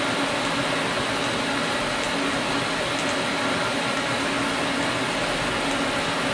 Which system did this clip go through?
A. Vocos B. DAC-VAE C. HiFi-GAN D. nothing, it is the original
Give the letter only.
D